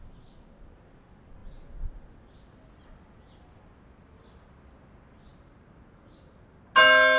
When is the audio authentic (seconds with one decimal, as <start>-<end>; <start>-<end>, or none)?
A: 0.0-7.2